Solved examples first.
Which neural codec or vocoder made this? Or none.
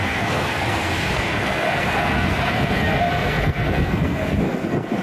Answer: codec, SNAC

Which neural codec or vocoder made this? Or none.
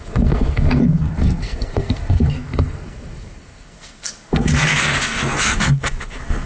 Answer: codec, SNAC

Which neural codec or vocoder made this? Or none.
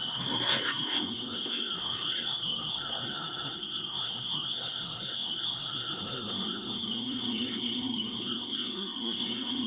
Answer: codec, SNAC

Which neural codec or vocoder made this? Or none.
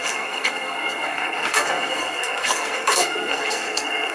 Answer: codec, SNAC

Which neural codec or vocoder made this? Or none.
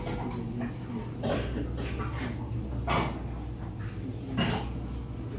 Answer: none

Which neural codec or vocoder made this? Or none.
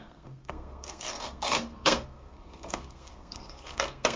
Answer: codec, SNAC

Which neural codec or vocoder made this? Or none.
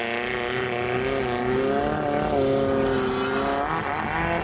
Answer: none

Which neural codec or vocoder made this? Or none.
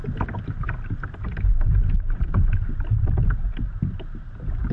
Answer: none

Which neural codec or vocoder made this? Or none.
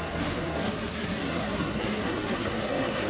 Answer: codec, SNAC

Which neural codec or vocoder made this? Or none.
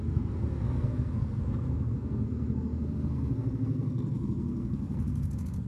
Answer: codec, SNAC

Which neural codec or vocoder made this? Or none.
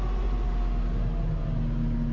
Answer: none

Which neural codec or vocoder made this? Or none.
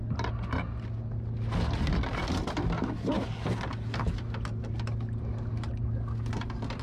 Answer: none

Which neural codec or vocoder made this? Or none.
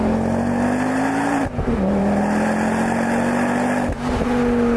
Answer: none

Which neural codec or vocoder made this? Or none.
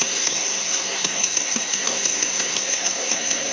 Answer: codec, SNAC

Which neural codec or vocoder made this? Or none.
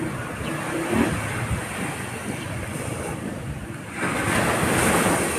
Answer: none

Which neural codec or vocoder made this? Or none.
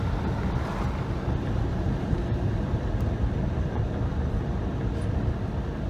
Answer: none